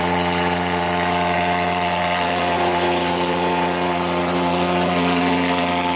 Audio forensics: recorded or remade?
recorded